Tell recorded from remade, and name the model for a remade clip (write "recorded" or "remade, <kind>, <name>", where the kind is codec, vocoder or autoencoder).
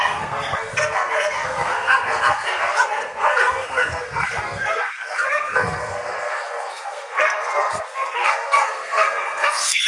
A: remade, codec, SNAC